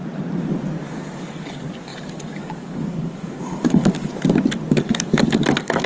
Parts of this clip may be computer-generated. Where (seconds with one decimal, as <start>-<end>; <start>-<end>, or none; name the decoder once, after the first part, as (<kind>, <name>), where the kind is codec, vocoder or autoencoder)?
0.9-4.1 (codec, DAC); 4.7-5.9